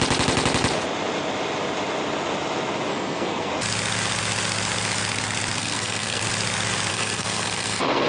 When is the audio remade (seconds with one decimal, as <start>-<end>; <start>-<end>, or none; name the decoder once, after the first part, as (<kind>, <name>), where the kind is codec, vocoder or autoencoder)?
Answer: 2.9-3.5 (codec, SNAC); 5.6-6.2; 6.9-8.1